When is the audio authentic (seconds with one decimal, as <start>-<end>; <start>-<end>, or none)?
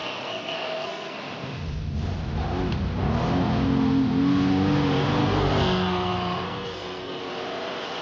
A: 1.2-5.2; 7.2-8.0